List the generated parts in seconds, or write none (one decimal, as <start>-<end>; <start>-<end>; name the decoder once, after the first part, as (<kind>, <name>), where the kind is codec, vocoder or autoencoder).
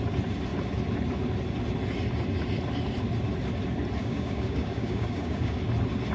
4.0-5.6 (codec, DAC)